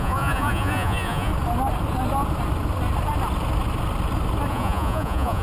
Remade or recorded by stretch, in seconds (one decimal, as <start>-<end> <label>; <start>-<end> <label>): 0.0-1.3 remade; 1.3-4.5 recorded; 4.5-5.4 remade